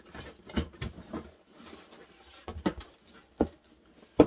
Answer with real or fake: real